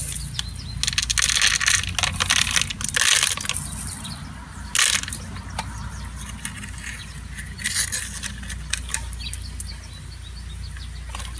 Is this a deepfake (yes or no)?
no